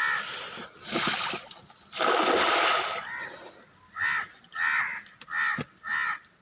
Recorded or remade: recorded